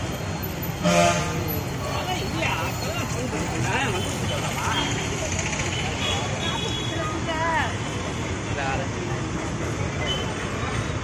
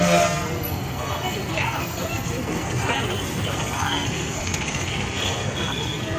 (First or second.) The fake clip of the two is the second